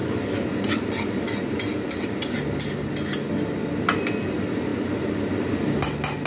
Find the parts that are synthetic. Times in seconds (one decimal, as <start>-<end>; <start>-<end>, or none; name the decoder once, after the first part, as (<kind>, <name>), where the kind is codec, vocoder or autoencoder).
none